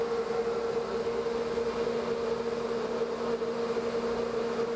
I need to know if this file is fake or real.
real